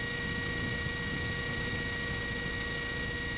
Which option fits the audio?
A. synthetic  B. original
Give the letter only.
B